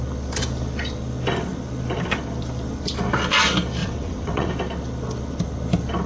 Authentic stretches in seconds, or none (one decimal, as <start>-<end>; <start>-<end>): 0.0-3.8; 4.5-6.1